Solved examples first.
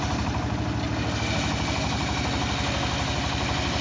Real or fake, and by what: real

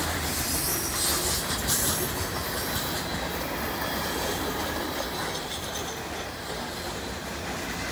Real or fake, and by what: real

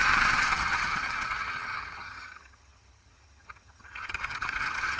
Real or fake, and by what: fake, vocoder, HiFi-GAN